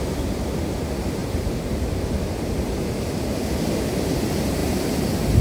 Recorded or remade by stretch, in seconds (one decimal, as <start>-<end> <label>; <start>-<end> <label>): 0.0-1.2 recorded; 1.2-2.5 remade; 2.5-5.4 recorded